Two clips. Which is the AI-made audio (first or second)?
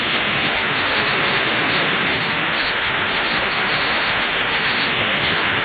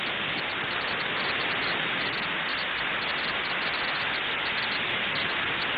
first